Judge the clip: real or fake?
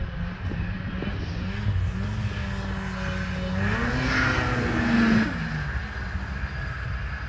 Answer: real